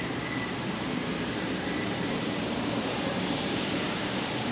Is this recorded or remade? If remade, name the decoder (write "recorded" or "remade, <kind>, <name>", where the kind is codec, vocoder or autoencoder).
remade, vocoder, BigVGAN v2